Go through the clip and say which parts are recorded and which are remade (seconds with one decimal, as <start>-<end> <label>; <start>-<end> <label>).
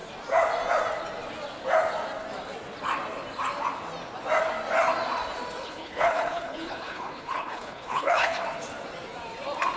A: 0.0-5.6 recorded; 5.6-8.4 remade; 8.4-9.8 recorded